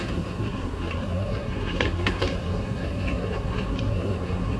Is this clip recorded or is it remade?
remade